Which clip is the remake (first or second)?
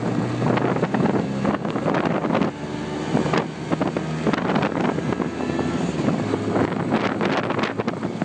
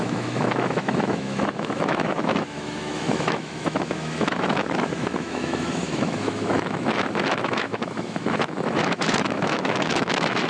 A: second